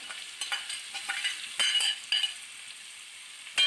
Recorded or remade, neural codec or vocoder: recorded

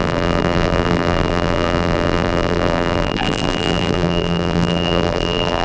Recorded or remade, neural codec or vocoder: remade, vocoder, BigVGAN v2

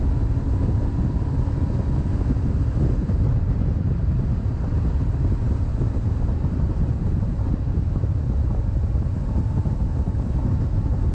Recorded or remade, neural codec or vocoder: recorded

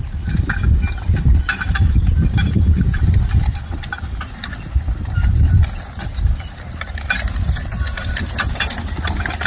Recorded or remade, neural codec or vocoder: recorded